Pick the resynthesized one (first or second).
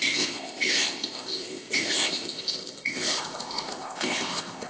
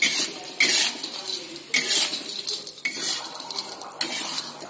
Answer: first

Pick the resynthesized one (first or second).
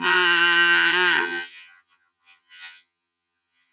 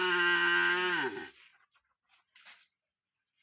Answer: first